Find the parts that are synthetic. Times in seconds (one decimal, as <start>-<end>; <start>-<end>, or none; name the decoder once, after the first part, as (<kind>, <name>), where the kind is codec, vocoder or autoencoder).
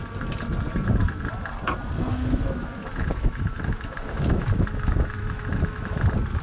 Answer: 2.1-5.9 (autoencoder, DAC-VAE)